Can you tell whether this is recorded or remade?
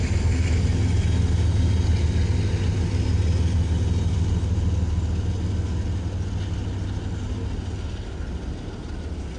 recorded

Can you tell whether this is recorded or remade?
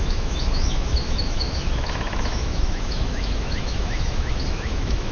remade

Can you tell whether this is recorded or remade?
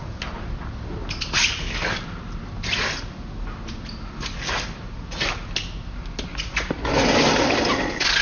recorded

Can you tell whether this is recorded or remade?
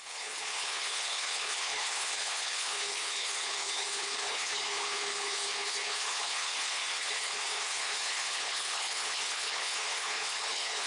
remade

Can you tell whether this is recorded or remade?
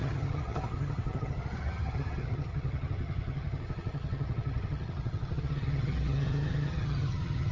remade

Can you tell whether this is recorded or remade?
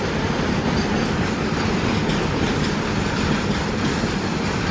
recorded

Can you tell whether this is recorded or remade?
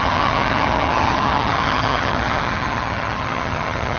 remade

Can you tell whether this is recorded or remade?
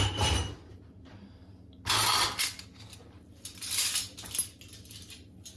recorded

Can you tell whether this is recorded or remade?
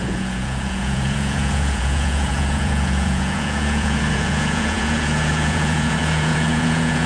remade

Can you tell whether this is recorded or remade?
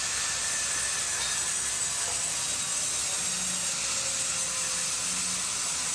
recorded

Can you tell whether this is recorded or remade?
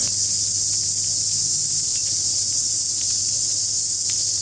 recorded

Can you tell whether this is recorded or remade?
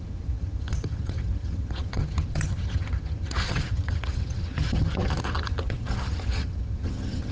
remade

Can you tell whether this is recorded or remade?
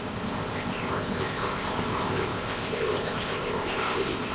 remade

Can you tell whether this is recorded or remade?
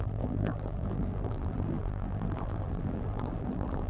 remade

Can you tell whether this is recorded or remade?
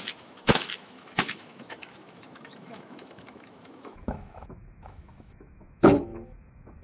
remade